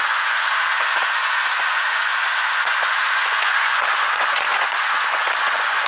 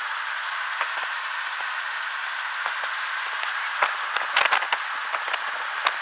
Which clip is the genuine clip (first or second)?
second